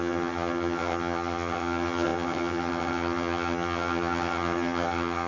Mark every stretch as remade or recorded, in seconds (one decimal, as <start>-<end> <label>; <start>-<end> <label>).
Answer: 0.0-5.3 remade